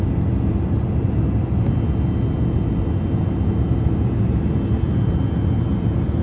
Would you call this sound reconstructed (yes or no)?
no